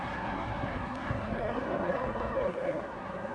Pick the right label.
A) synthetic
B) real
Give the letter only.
A